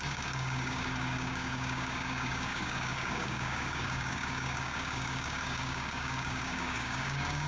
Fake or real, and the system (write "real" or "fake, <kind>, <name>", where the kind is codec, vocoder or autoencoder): fake, codec, DAC